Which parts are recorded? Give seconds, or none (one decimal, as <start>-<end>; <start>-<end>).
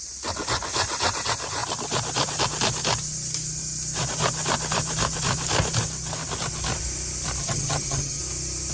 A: 0.0-7.4; 8.2-8.7